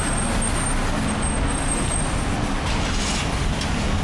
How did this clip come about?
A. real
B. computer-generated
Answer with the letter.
A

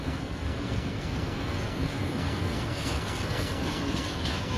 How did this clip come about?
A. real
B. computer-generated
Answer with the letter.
B